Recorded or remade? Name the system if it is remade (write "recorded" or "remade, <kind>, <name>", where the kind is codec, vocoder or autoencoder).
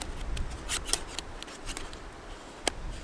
recorded